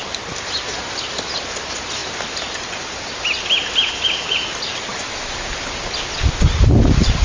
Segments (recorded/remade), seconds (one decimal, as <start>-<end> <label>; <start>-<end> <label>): 0.0-4.9 recorded; 4.9-5.5 remade; 5.5-7.2 recorded